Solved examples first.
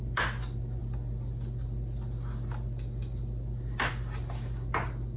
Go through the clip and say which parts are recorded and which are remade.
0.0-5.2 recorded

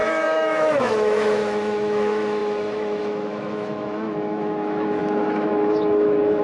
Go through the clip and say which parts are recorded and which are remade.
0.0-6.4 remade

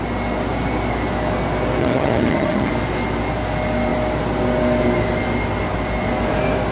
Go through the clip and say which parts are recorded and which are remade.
0.0-1.8 recorded; 1.8-2.7 remade; 2.7-6.7 recorded

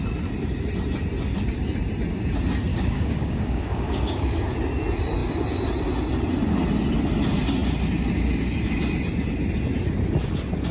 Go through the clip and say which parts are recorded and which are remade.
0.0-2.7 recorded; 2.7-4.5 remade; 4.5-10.7 recorded